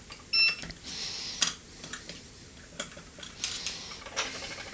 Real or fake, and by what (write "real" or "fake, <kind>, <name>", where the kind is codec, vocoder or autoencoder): real